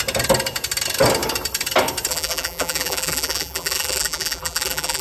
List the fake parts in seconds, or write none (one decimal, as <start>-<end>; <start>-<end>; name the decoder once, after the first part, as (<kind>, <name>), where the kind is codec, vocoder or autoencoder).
2.1-5.0 (vocoder, BigVGAN v2)